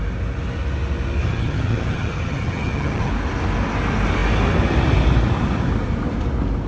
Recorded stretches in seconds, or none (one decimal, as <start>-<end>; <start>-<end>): 0.0-1.2; 3.1-6.7